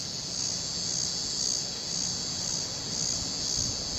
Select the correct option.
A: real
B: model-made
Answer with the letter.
A